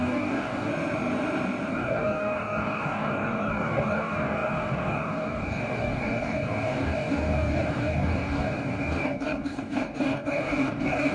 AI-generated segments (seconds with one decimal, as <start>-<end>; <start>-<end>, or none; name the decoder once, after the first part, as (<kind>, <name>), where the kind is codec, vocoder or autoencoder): 0.0-0.7 (codec, DAC); 1.7-11.1